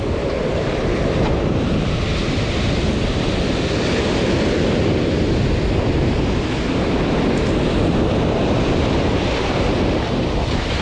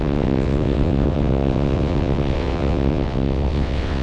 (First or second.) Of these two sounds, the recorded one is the first